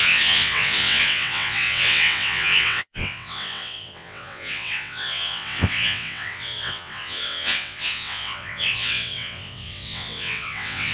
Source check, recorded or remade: remade